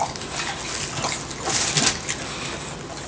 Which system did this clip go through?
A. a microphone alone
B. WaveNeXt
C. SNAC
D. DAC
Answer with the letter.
A